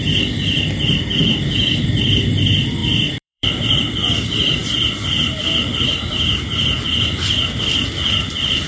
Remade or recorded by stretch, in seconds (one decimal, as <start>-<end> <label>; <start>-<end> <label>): 0.0-2.8 recorded; 2.8-3.8 remade; 3.8-8.7 recorded